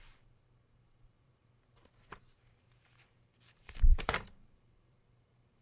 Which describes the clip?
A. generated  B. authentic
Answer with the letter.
A